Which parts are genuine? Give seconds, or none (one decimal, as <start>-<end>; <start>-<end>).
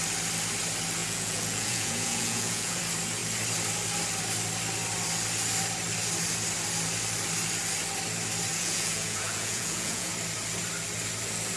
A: 0.0-1.0; 2.8-8.5; 10.1-11.6